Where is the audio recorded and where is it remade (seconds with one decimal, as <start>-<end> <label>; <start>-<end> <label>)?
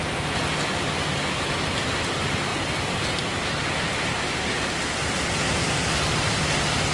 0.0-6.9 recorded